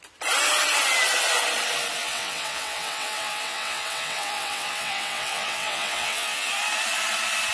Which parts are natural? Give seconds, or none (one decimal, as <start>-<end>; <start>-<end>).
0.0-2.0; 6.5-7.5